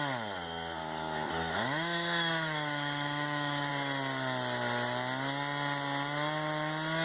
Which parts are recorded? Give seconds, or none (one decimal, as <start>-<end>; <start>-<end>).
0.0-0.8; 3.7-7.0

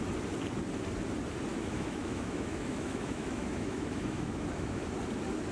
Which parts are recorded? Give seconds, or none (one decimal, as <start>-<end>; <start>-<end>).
0.0-1.5; 4.8-5.5

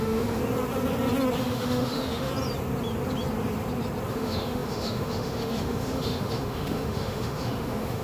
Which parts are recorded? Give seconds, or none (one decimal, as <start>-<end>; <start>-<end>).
0.4-1.4; 2.3-4.1

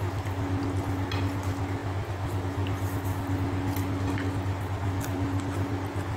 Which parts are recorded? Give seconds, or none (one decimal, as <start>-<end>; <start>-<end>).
0.0-6.2

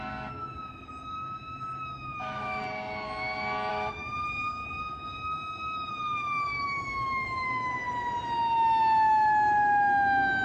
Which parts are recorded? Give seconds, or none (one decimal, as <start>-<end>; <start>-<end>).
0.0-0.4; 2.6-3.7; 7.7-10.4

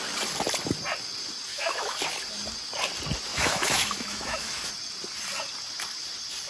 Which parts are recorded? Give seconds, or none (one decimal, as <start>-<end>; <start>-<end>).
0.0-1.5; 2.0-3.3; 4.7-6.5

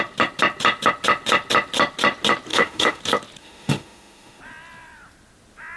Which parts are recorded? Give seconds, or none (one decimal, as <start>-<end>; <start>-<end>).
0.0-2.5; 3.0-3.4; 4.4-5.8